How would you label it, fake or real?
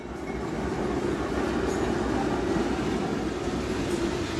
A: real